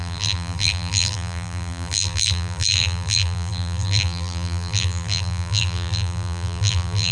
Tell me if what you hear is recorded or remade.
remade